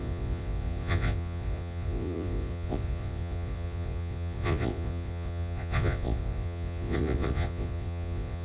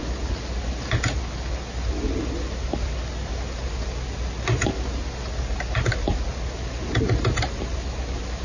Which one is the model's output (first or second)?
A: first